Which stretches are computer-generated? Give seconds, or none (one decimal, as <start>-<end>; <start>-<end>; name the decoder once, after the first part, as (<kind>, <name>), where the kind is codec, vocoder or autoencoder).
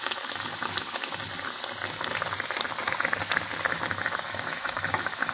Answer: 0.0-0.5 (autoencoder, DAC-VAE); 3.7-5.3